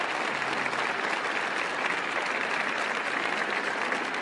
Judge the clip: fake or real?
real